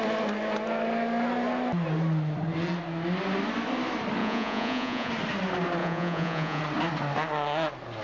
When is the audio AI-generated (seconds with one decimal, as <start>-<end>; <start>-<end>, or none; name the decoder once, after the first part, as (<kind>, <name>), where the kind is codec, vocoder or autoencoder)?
4.2-5.1 (vocoder, Vocos); 5.8-6.6